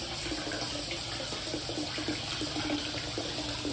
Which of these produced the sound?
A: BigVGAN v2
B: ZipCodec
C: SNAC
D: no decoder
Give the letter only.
D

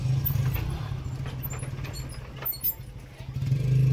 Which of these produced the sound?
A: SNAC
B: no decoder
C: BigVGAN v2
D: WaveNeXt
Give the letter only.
B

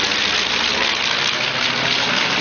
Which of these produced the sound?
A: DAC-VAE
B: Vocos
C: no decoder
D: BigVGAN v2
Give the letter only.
C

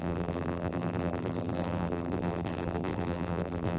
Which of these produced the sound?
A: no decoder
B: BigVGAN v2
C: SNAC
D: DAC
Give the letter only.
B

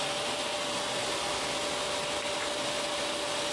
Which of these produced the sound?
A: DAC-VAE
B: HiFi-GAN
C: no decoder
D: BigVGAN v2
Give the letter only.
C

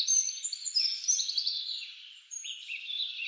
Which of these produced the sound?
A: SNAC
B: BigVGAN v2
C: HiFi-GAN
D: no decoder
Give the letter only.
B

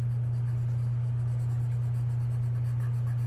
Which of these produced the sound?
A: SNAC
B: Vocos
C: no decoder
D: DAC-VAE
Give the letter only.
C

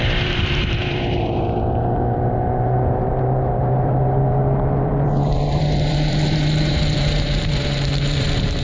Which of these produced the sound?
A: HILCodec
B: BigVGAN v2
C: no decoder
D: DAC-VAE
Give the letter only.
B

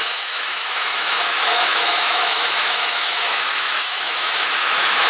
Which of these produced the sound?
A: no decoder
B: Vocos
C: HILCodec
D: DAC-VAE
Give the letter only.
D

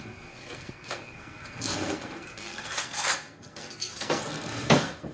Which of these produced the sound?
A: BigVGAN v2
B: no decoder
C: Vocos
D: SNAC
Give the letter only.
D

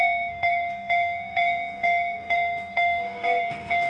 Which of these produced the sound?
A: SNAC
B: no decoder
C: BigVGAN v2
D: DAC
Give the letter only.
A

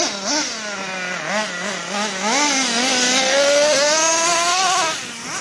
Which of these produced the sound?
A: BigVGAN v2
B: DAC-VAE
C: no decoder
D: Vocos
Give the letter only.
C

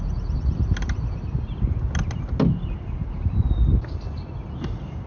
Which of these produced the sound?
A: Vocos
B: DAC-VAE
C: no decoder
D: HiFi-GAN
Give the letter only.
C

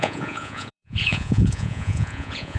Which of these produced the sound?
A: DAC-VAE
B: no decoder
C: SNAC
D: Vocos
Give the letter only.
D